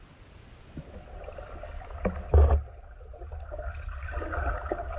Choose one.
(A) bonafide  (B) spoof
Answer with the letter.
A